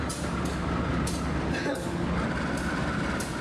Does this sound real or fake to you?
real